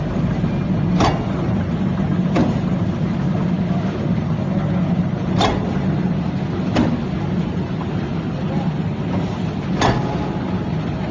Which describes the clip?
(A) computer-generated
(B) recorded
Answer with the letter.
B